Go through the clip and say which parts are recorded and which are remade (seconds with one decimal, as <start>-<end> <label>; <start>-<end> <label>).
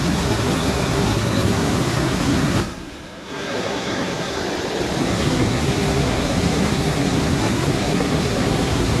0.0-4.4 remade; 4.4-5.0 recorded; 5.0-9.0 remade